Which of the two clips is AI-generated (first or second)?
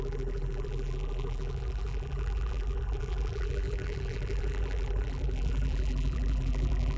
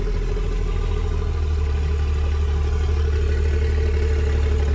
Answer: first